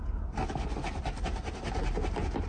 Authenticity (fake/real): real